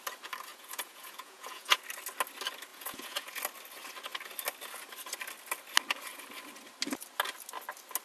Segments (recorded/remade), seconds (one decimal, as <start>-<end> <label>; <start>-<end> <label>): 0.0-0.5 recorded; 0.5-1.8 remade; 1.8-2.7 recorded; 2.7-3.4 remade; 3.4-8.0 recorded